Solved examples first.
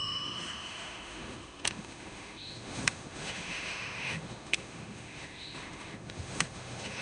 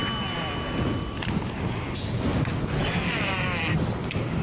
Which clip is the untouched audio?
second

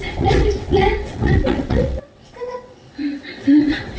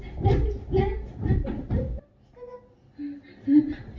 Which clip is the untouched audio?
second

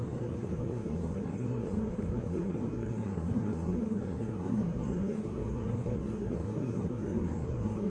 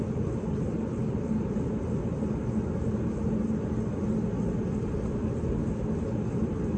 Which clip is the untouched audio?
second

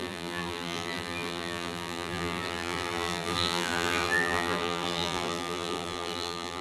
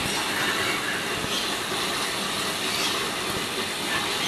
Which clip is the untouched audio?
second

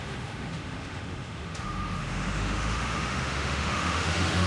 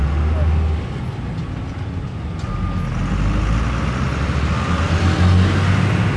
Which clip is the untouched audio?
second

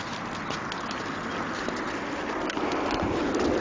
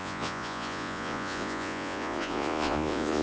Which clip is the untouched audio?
first